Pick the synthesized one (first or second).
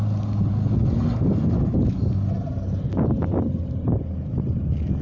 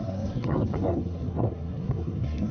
second